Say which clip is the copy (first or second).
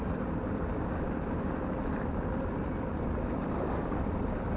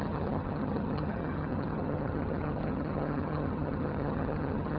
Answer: second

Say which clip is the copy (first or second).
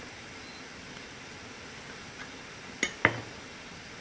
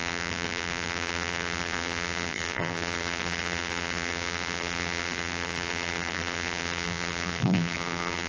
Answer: second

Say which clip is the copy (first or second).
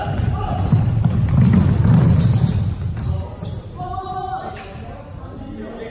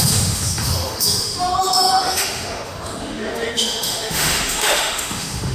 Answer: second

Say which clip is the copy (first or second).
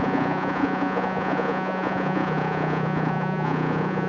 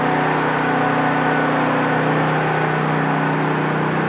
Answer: first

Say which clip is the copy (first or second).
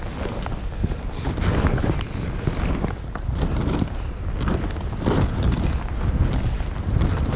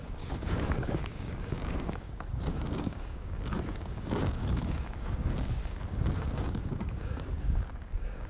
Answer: second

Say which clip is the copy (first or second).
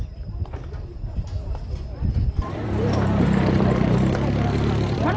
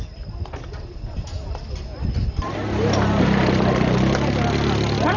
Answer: first